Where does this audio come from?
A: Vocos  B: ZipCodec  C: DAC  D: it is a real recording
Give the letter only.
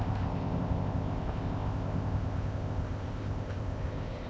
B